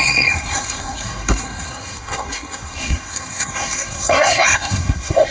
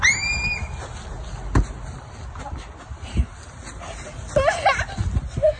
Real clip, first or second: second